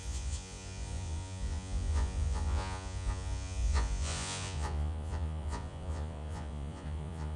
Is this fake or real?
fake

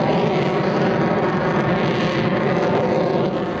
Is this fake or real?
real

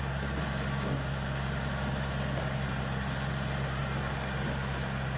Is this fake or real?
real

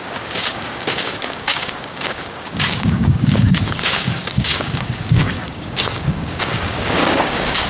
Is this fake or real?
fake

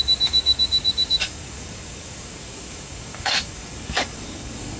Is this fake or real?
fake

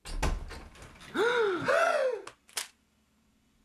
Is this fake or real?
real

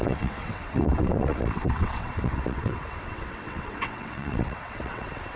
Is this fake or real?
fake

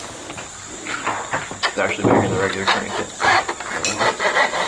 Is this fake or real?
real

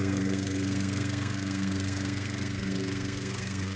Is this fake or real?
fake